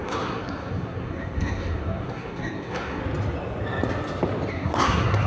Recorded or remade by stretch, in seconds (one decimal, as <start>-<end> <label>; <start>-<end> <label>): 0.0-3.0 remade; 3.0-4.5 recorded; 4.5-5.3 remade